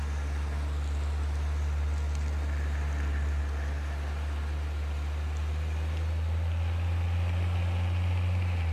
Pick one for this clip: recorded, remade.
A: recorded